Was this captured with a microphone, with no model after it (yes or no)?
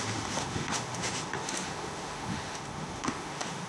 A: no